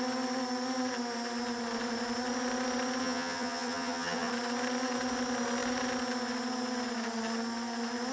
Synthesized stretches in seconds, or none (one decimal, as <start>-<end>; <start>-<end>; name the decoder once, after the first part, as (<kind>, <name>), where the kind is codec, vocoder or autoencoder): 3.0-4.3 (vocoder, HiFi-GAN)